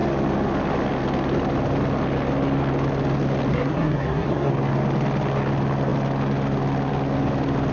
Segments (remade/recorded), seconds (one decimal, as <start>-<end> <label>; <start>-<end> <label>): 0.0-3.5 recorded; 3.5-4.5 remade; 4.5-7.7 recorded

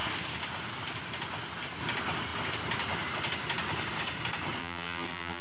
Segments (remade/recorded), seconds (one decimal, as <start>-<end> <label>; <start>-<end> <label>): 0.0-4.6 recorded; 4.6-5.4 remade